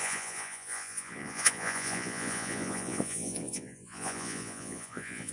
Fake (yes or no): yes